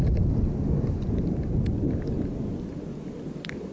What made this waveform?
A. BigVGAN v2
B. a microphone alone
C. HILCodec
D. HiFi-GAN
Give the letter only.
B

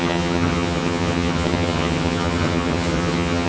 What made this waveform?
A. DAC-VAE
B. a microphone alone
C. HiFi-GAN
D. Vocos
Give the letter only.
C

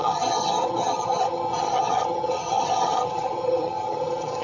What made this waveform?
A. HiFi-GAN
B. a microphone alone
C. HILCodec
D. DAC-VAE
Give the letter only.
A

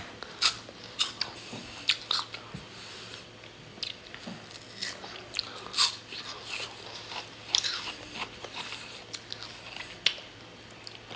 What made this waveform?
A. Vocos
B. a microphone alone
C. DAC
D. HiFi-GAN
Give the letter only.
B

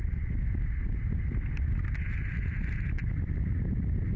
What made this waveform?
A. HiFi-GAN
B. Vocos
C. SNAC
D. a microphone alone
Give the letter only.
D